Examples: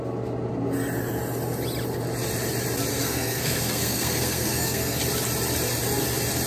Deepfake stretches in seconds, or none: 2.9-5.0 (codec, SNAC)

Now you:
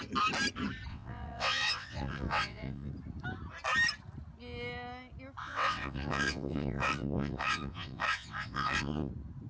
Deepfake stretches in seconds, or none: 0.9-2.9 (vocoder, WaveNeXt); 5.4-9.1